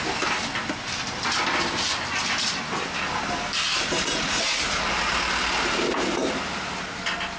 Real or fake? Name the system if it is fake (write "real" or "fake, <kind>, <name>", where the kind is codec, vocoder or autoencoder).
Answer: real